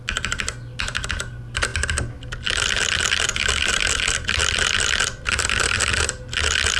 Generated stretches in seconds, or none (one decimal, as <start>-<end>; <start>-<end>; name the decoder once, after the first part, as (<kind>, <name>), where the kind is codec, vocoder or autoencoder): none